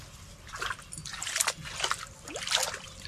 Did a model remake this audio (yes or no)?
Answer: no